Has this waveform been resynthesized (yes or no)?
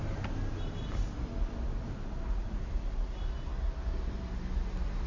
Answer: no